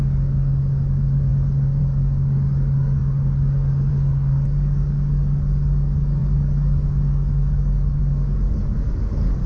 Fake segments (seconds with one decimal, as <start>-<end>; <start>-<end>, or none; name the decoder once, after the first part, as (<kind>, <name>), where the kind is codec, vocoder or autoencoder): 0.0-9.5 (codec, DAC)